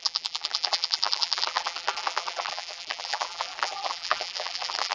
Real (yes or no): no